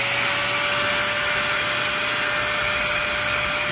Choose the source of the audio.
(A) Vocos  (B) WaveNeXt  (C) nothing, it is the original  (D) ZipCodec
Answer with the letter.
C